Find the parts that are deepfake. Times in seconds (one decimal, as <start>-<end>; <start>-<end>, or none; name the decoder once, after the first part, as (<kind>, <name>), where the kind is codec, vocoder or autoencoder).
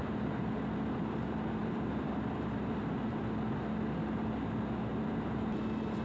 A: 0.0-0.5 (vocoder, BigVGAN v2); 1.6-3.2; 4.9-5.6